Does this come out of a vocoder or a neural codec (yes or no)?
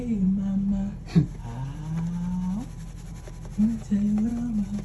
no